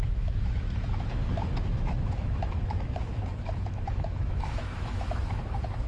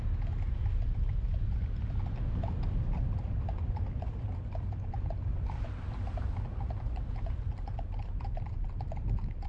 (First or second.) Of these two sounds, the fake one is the first